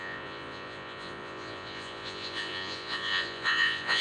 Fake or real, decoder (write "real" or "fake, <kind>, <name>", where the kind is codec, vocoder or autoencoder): fake, vocoder, Vocos